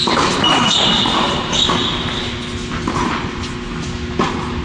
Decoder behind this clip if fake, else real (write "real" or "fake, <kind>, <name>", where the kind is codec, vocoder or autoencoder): real